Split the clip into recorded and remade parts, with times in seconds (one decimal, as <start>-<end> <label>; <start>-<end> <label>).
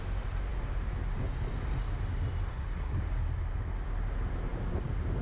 0.0-2.5 recorded; 2.5-3.0 remade; 3.0-5.2 recorded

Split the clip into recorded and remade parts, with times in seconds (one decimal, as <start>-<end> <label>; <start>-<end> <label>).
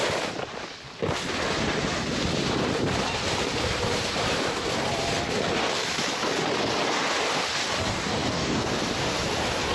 0.0-7.9 recorded; 7.9-8.7 remade; 8.7-9.7 recorded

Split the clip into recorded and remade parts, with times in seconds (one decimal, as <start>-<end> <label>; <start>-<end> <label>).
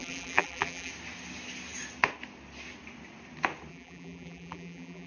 0.0-0.9 remade; 0.9-3.7 recorded; 3.7-5.1 remade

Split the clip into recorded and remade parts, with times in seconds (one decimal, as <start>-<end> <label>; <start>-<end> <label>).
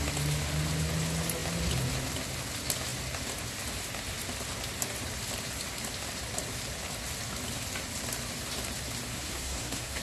0.0-9.1 recorded; 9.1-10.0 remade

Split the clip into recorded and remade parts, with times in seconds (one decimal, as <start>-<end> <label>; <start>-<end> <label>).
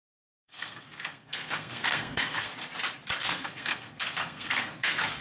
0.0-2.5 remade; 2.5-3.2 recorded; 3.2-5.2 remade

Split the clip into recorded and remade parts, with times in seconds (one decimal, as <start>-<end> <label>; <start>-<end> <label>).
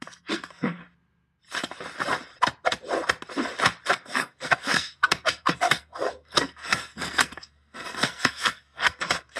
0.0-0.8 remade; 0.8-3.9 recorded; 3.9-9.4 remade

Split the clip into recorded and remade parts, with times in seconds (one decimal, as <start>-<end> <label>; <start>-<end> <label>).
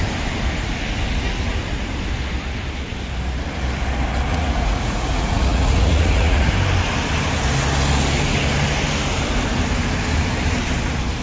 0.0-4.3 recorded; 4.3-6.5 remade; 6.5-11.2 recorded